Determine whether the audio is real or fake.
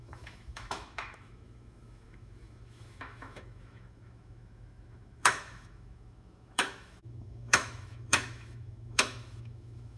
fake